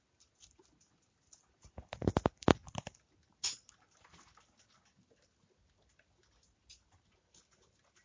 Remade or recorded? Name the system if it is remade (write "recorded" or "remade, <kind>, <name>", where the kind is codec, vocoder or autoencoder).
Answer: recorded